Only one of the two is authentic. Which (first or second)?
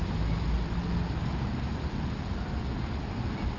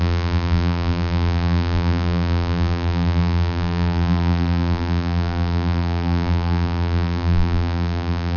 first